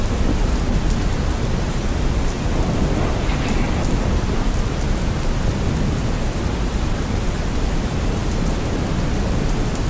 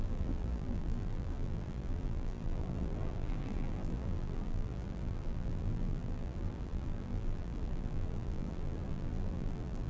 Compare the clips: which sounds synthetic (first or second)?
second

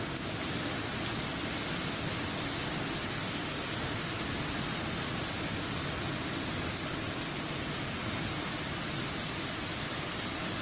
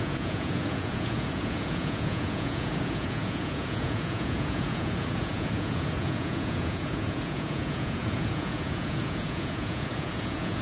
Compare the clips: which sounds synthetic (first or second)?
second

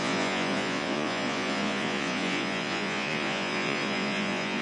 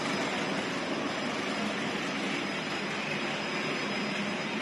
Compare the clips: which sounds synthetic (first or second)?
first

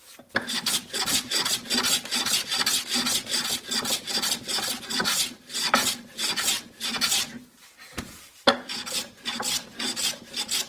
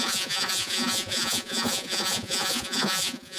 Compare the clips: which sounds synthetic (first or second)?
second